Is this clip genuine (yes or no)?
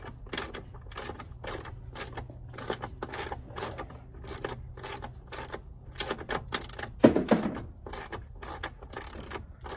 yes